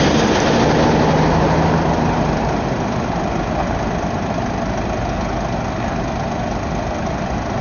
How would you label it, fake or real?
real